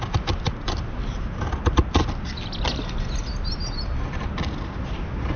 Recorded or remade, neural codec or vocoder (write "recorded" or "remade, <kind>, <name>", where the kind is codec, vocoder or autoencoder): recorded